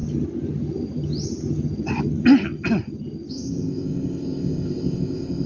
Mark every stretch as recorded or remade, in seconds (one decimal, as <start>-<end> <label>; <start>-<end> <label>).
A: 0.0-3.3 recorded; 3.3-5.5 remade